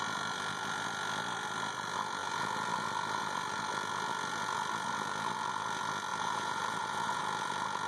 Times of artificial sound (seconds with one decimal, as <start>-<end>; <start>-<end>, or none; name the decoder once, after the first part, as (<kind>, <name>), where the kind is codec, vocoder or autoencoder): 6.1-7.2 (vocoder, BigVGAN v2)